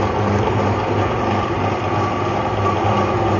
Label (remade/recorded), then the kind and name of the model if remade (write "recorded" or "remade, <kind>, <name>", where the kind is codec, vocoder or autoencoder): recorded